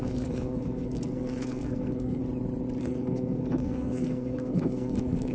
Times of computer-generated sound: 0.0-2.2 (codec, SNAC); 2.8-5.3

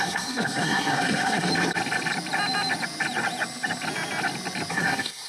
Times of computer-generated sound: 0.0-1.5 (codec, SNAC); 4.7-5.3

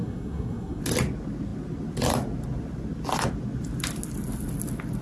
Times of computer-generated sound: 0.0-0.8 (codec, SNAC)